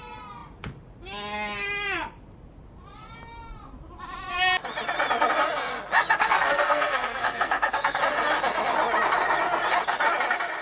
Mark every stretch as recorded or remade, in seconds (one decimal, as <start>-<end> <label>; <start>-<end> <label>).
0.0-6.2 recorded; 6.2-8.0 remade; 8.0-10.6 recorded